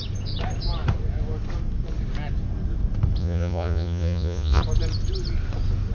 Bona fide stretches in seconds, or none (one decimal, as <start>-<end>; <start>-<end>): 0.0-3.2; 4.6-5.9